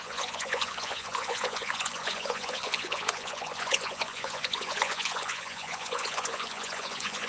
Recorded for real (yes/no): no